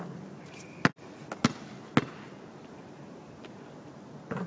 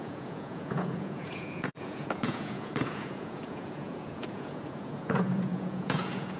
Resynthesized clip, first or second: second